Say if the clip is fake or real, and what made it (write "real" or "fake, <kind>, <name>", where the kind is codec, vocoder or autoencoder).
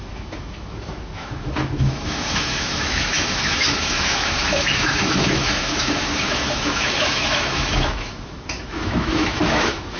fake, autoencoder, DAC-VAE